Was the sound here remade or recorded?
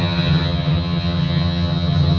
remade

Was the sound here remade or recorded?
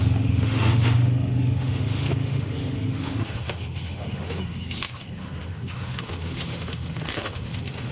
remade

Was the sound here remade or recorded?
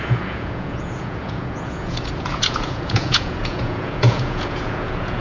remade